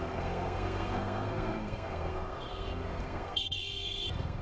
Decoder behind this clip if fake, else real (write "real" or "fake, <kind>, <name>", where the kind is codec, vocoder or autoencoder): fake, codec, SNAC